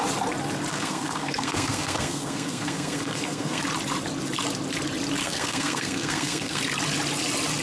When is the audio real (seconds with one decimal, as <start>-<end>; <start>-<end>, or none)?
0.0-0.7; 3.6-5.2; 6.6-7.6